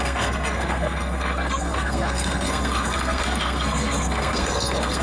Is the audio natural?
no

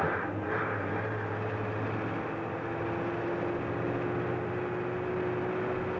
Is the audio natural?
yes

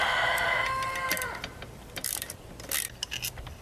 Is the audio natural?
yes